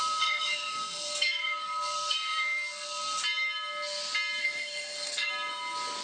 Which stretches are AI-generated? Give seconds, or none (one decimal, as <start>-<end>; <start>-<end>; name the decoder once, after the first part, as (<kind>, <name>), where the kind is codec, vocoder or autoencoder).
0.0-3.2 (codec, SNAC); 4.4-5.3